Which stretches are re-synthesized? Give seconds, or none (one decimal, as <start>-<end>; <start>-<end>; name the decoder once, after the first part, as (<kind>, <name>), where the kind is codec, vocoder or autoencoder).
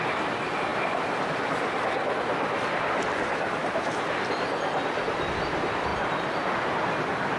3.1-4.2 (vocoder, BigVGAN v2); 5.9-6.5